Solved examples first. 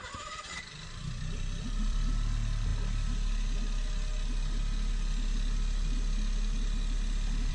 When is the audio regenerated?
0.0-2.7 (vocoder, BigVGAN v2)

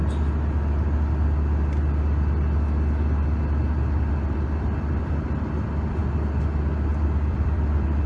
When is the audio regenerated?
4.1-6.0 (vocoder, BigVGAN v2); 7.0-8.1

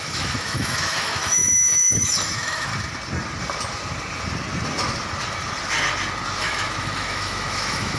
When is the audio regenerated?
0.0-2.7 (autoencoder, DAC-VAE); 6.4-8.0

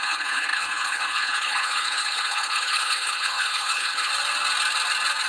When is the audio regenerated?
0.0-4.1 (codec, HILCodec)